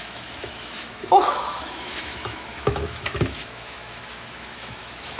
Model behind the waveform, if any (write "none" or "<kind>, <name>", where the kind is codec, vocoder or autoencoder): autoencoder, DAC-VAE